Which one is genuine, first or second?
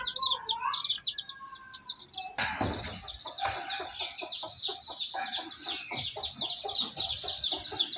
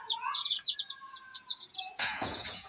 first